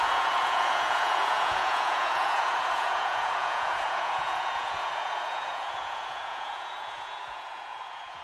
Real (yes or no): no